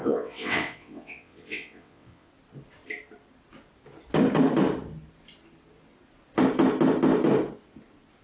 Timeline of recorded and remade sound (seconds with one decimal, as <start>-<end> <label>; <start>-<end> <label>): 0.0-2.3 remade; 2.3-8.2 recorded